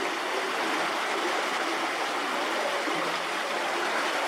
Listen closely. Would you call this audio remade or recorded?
recorded